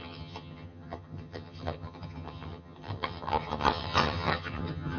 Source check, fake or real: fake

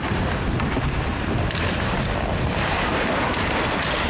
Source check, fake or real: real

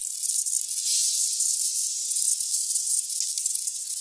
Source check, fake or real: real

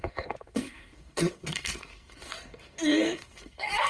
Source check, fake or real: fake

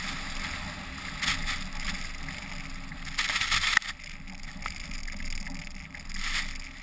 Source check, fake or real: real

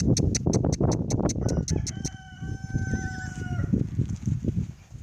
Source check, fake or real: real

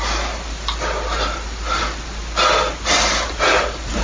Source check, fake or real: real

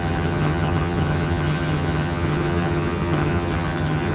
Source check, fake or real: fake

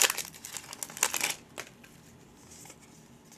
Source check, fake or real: real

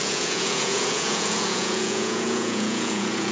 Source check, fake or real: fake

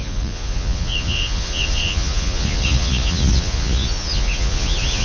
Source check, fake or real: fake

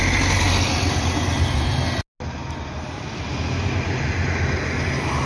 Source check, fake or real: real